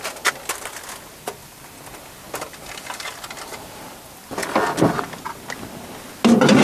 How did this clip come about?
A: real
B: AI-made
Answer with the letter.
A